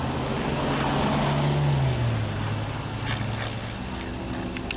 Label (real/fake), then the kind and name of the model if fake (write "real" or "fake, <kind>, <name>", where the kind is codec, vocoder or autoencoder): real